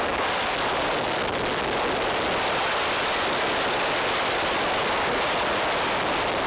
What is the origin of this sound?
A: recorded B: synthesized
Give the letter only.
A